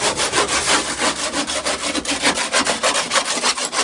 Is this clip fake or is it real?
fake